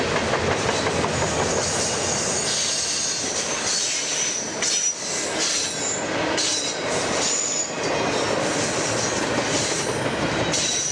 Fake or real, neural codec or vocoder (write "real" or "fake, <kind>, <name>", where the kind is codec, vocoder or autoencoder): real